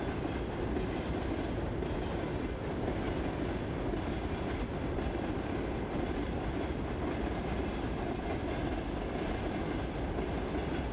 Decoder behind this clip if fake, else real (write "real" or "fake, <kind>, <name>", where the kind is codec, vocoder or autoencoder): real